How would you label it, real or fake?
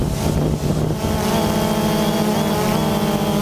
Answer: real